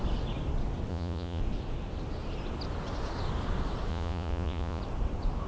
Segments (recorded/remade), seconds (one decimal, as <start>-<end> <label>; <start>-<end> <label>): 0.0-0.9 recorded; 0.9-1.4 remade; 1.4-3.9 recorded; 3.9-4.8 remade; 4.8-5.5 recorded